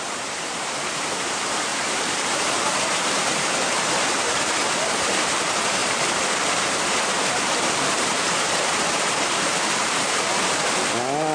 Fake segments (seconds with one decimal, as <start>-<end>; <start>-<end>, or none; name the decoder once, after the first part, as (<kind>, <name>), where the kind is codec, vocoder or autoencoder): 0.0-11.3 (vocoder, BigVGAN v2)

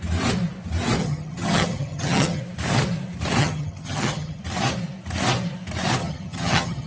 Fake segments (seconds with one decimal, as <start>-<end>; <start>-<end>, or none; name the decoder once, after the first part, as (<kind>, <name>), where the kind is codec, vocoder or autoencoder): 1.0-2.4 (vocoder, HiFi-GAN); 3.4-4.4; 6.0-6.9

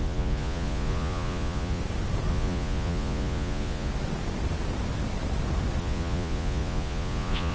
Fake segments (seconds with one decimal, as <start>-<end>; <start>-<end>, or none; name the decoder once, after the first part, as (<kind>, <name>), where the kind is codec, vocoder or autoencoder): 0.0-1.8 (vocoder, Vocos); 2.3-3.9; 5.8-7.5

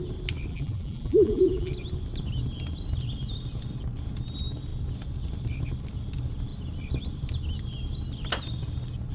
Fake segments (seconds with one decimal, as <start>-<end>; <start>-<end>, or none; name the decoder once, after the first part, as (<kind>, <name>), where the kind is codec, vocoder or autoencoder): 0.5-1.7 (vocoder, BigVGAN v2)

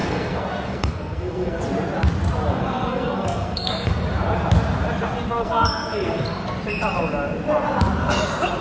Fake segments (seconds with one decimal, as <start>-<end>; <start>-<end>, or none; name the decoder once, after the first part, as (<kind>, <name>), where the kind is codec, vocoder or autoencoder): 0.0-1.6 (codec, SNAC); 2.5-3.9; 5.4-6.2

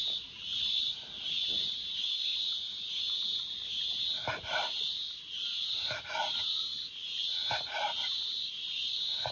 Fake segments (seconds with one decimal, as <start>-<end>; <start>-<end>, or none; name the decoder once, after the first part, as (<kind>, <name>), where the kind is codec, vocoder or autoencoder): 2.3-3.0 (vocoder, BigVGAN v2); 5.5-6.0